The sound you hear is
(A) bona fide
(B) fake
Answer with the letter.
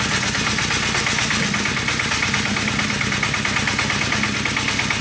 A